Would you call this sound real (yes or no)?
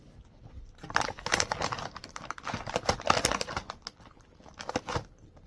yes